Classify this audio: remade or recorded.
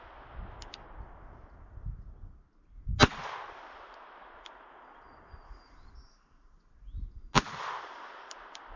recorded